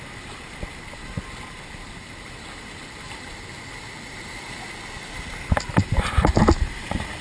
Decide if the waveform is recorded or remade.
recorded